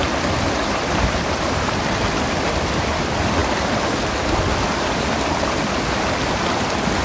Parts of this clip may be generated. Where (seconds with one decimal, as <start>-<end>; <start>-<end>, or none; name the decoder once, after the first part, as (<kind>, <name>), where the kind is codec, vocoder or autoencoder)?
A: none